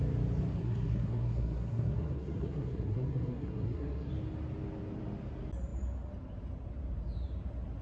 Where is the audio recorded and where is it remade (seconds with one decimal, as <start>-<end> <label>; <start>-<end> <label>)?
0.0-0.6 recorded; 0.6-4.1 remade; 4.1-7.8 recorded